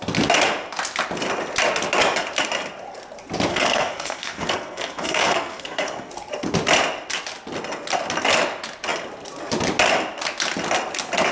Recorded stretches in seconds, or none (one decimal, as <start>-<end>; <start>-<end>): 0.0-3.5; 6.1-11.3